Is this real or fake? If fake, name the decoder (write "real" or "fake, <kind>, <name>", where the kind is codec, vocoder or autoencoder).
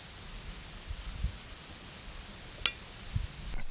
real